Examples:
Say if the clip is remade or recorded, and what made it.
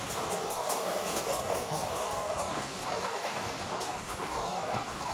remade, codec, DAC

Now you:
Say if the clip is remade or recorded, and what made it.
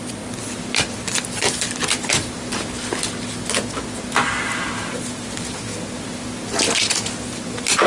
recorded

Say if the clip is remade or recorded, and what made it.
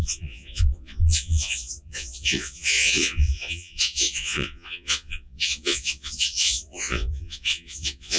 remade, vocoder, Vocos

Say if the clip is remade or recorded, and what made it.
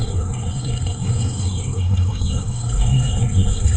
remade, codec, SNAC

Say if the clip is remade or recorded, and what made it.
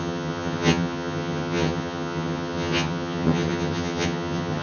remade, vocoder, HiFi-GAN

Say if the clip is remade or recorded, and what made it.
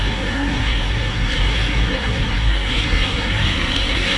remade, codec, SNAC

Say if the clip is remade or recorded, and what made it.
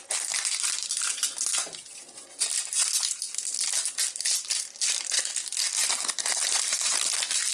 recorded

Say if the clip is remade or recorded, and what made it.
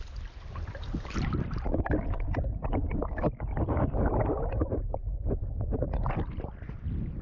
recorded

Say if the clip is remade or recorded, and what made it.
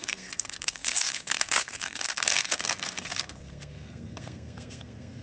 remade, codec, SNAC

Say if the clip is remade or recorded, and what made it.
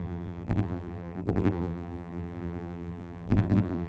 remade, vocoder, BigVGAN v2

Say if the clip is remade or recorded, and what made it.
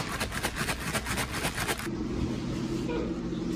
recorded